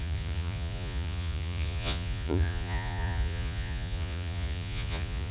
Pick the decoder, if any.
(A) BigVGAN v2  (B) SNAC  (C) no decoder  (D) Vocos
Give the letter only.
D